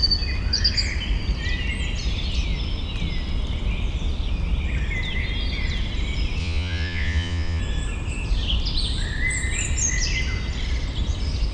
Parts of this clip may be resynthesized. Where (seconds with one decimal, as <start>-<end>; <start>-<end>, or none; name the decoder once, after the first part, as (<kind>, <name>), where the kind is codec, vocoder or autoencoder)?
6.4-7.6 (vocoder, Vocos)